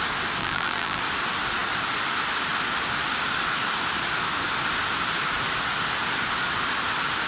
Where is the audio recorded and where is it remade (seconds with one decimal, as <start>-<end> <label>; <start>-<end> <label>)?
0.0-0.4 recorded; 0.4-1.0 remade; 1.0-7.3 recorded